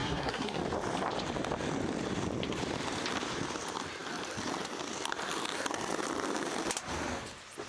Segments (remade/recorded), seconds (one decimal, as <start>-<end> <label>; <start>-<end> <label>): 0.0-0.6 remade; 0.6-7.7 recorded